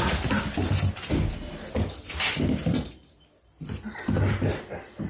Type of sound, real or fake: real